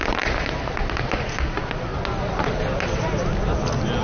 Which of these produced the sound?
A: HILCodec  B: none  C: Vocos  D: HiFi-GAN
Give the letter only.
B